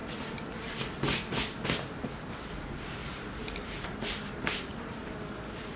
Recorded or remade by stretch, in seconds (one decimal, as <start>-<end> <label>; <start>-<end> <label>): 0.0-3.0 recorded; 3.0-4.6 remade; 4.6-5.0 recorded; 5.0-5.8 remade